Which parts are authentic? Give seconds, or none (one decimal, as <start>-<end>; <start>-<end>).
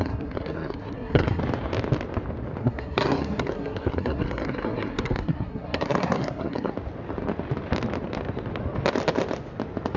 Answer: 1.4-2.6; 6.7-10.0